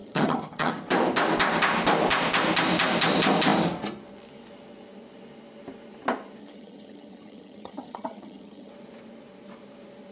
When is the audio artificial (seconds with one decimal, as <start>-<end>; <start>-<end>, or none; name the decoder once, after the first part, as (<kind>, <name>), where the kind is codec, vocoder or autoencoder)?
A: 0.0-0.7 (vocoder, HiFi-GAN); 6.4-8.7